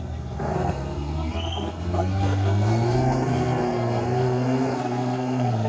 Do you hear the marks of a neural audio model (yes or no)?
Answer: yes